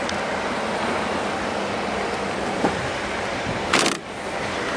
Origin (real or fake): real